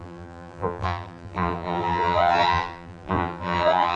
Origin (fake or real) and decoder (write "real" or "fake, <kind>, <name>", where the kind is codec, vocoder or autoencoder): fake, vocoder, BigVGAN v2